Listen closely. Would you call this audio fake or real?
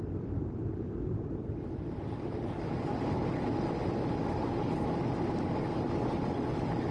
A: real